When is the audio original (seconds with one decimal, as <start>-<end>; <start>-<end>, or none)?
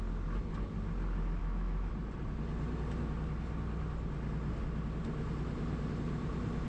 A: 0.0-1.4; 1.9-6.7